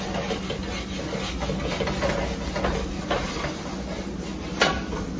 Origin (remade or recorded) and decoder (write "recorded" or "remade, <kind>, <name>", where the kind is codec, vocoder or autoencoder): recorded